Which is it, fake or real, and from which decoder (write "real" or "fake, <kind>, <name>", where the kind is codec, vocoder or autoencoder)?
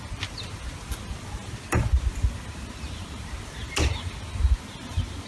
real